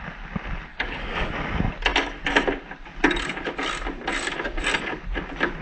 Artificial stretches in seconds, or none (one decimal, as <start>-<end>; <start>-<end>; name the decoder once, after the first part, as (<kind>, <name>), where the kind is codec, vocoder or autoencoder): 0.7-1.3 (codec, DAC)